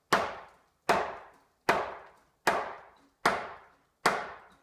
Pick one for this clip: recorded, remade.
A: recorded